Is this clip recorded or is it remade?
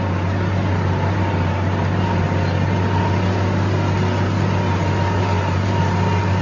recorded